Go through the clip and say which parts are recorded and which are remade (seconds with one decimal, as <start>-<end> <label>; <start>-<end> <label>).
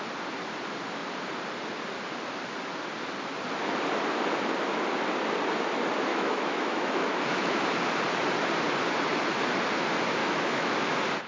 0.0-6.1 recorded; 6.1-7.6 remade; 7.6-10.2 recorded; 10.2-10.8 remade; 10.8-11.3 recorded